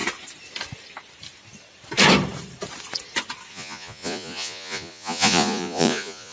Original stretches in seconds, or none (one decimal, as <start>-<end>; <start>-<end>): 0.0-3.5